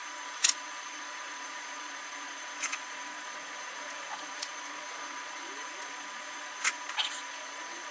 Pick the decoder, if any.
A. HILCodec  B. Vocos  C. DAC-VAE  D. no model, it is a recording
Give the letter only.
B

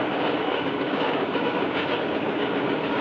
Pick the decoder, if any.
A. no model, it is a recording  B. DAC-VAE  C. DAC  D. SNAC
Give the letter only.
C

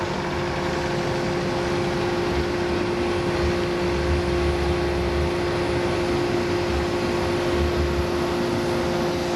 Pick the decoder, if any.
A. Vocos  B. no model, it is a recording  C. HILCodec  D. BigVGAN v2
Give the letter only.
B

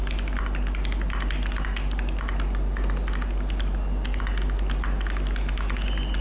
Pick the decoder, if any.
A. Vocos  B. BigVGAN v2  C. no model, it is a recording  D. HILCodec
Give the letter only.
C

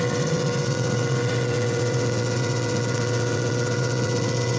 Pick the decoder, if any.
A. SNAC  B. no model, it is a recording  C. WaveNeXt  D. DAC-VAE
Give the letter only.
C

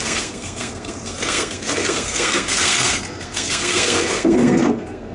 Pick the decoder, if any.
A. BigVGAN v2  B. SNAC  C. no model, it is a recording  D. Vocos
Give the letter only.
B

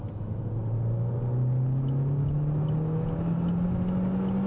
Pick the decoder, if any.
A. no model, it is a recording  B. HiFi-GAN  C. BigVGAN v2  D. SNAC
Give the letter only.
A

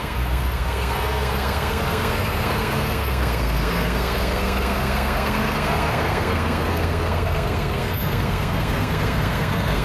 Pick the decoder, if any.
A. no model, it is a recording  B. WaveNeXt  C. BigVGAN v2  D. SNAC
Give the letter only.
D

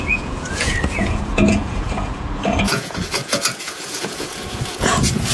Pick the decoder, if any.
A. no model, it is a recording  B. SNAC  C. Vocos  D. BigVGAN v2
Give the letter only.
C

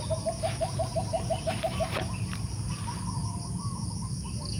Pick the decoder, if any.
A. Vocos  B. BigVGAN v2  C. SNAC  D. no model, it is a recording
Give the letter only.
D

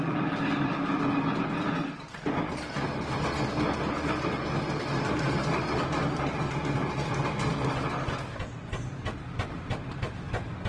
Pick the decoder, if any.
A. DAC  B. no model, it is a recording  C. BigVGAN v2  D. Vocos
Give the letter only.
B